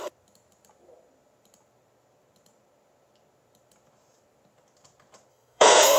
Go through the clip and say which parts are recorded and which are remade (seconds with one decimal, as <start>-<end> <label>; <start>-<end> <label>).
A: 0.0-5.3 recorded; 5.3-6.0 remade